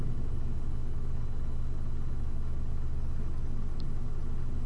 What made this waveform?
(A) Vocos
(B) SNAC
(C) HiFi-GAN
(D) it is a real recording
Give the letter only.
D